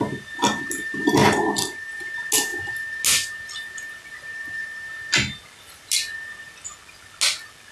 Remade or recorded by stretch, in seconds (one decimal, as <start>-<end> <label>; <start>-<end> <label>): 0.0-1.2 recorded; 1.2-1.9 remade; 1.9-7.7 recorded